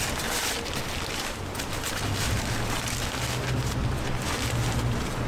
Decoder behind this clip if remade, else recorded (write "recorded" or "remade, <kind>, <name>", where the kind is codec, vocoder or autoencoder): recorded